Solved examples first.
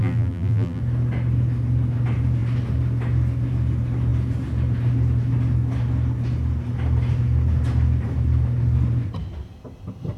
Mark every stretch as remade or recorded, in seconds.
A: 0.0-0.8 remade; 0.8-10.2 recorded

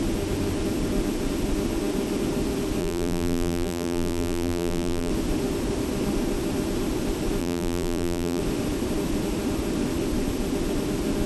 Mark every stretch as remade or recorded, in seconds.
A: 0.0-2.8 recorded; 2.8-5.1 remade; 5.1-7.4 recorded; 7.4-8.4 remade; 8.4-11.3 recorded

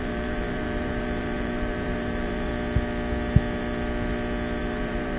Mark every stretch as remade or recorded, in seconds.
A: 0.0-2.5 remade; 2.5-4.6 recorded; 4.6-5.2 remade

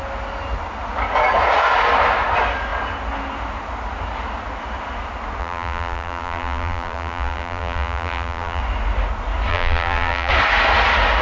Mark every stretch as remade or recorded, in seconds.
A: 0.0-5.4 recorded; 5.4-8.6 remade; 8.6-9.5 recorded; 9.5-10.3 remade; 10.3-11.2 recorded

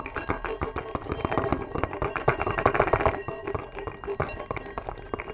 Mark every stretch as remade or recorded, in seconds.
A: 0.0-1.5 recorded; 1.5-2.8 remade; 2.8-5.3 recorded

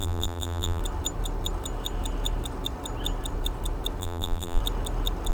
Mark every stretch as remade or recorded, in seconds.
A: 0.0-0.8 remade; 0.8-4.0 recorded; 4.0-4.6 remade; 4.6-5.3 recorded